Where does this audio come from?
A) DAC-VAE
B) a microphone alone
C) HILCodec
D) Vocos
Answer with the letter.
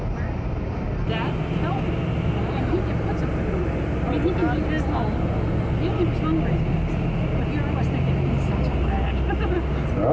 B